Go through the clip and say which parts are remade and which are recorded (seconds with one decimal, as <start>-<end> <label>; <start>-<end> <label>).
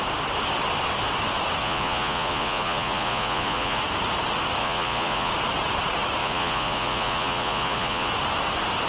0.0-1.6 recorded; 1.6-3.8 remade; 3.8-4.6 recorded; 4.6-5.3 remade; 5.3-6.2 recorded; 6.2-8.1 remade; 8.1-8.9 recorded